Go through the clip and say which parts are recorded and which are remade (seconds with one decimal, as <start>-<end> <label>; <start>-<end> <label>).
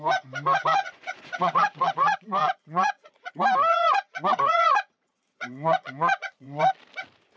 0.0-0.7 recorded; 0.7-3.3 remade; 3.3-3.7 recorded; 3.7-6.7 remade; 6.7-7.4 recorded